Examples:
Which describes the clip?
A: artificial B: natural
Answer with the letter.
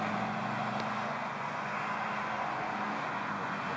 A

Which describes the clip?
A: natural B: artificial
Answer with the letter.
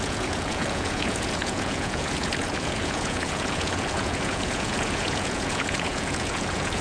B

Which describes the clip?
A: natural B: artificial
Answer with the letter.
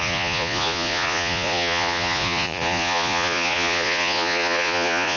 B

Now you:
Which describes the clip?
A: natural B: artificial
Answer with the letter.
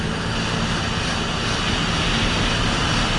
A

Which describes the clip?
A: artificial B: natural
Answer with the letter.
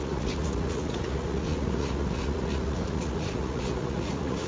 A